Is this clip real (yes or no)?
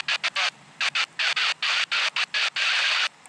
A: yes